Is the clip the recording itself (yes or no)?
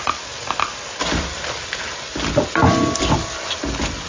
yes